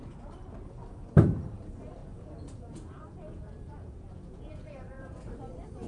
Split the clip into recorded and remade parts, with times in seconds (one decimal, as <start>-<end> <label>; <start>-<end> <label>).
0.0-2.0 recorded; 2.0-5.2 remade; 5.2-5.9 recorded